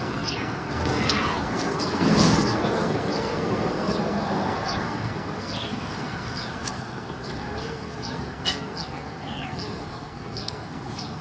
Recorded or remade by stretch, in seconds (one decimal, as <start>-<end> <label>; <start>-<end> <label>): 0.0-11.2 remade

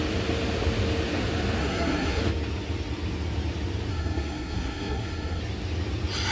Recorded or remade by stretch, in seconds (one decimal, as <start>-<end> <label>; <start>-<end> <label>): 0.0-1.6 recorded; 1.6-2.2 remade; 2.2-3.9 recorded; 3.9-5.4 remade; 5.4-6.3 recorded